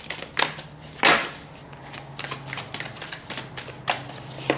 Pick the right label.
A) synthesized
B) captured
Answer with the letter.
B